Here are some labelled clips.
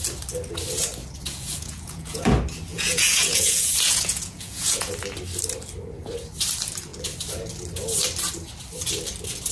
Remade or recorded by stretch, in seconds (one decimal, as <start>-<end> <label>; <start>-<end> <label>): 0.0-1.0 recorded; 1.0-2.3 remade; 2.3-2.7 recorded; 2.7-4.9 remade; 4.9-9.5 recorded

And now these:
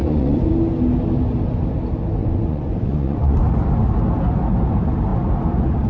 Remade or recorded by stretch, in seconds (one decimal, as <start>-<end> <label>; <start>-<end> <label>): 0.0-0.5 remade; 0.5-2.2 recorded; 2.2-3.4 remade; 3.4-5.9 recorded

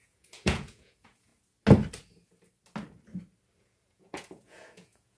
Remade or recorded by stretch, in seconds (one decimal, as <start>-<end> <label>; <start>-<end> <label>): 0.0-1.3 remade; 1.3-3.6 recorded; 3.6-5.2 remade